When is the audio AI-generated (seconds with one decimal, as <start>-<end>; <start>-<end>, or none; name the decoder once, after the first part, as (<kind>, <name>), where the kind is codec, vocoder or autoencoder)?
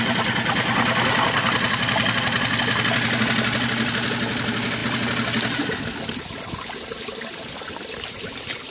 none